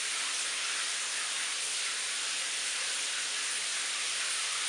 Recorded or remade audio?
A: recorded